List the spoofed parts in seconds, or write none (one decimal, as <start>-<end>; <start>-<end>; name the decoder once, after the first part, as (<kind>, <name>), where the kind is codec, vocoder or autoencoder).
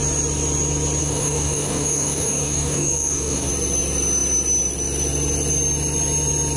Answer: 1.0-3.5 (codec, DAC)